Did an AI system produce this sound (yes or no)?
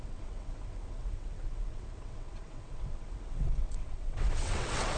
yes